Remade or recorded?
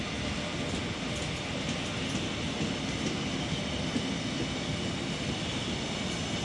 recorded